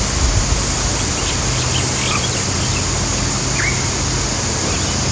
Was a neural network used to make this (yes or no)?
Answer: no